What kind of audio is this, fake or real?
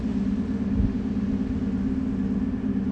real